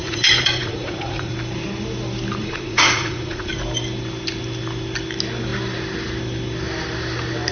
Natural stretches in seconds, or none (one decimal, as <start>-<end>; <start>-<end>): 1.3-2.4; 3.5-7.5